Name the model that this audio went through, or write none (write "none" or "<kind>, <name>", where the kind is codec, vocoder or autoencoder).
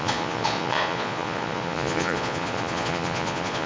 vocoder, Vocos